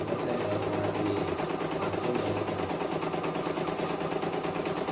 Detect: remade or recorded recorded